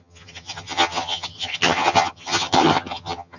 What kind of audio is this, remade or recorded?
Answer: remade